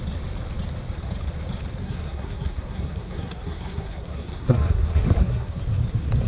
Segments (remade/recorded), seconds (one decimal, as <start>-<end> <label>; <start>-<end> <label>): 0.0-1.8 recorded; 1.8-5.6 remade; 5.6-6.3 recorded